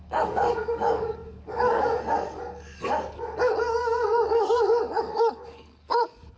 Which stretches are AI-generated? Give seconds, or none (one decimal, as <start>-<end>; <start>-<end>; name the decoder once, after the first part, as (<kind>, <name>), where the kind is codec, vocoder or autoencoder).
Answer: 0.0-6.4 (codec, DAC)